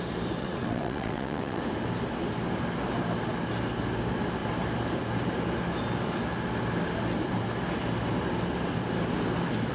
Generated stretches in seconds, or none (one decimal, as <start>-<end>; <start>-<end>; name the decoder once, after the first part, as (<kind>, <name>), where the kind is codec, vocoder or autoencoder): 0.4-1.6 (vocoder, WaveNeXt)